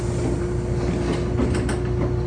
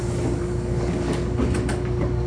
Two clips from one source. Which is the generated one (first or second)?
second